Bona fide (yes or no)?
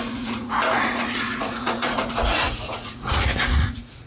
no